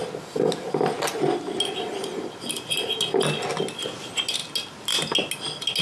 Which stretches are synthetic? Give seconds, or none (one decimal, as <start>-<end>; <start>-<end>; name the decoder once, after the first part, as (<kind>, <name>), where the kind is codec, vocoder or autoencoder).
none